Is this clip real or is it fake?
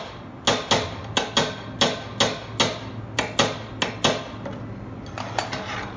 real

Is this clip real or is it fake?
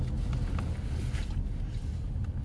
real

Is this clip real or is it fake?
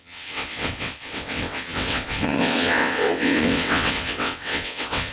fake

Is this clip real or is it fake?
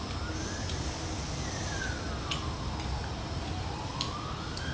real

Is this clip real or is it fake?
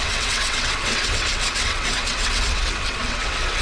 fake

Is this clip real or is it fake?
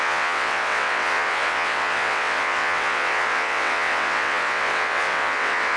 fake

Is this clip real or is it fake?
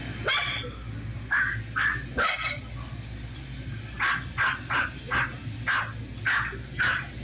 real